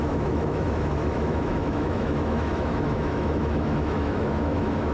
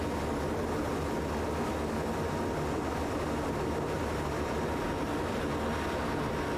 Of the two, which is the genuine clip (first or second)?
second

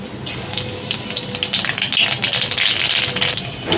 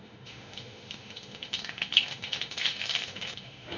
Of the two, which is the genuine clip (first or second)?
first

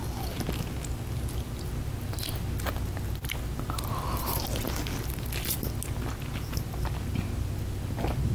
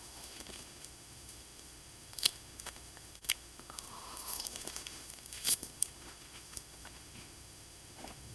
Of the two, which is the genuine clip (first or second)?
first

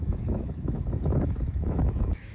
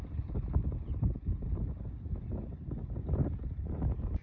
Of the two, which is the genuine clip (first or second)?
second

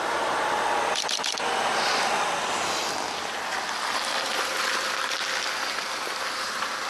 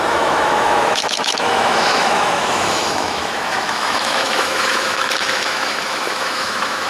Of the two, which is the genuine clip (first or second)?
first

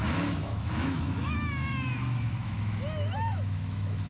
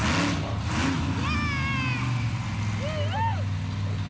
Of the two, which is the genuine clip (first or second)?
second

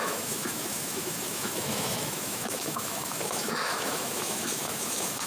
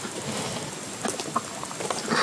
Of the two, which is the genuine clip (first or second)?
second